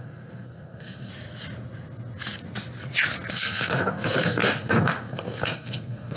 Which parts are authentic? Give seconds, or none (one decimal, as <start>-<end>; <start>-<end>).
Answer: 1.1-3.3